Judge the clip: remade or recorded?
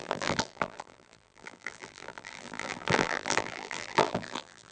remade